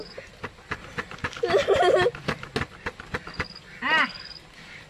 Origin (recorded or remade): recorded